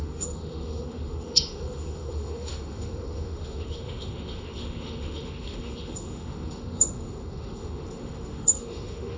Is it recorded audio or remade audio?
remade